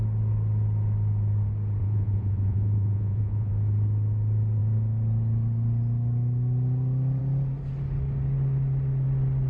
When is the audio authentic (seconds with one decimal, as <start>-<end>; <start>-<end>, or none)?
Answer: 0.0-1.8; 3.5-9.5